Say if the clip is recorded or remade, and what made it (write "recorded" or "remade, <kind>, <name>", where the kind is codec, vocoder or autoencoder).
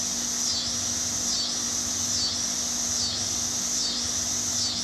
recorded